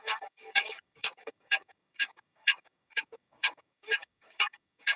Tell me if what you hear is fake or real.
fake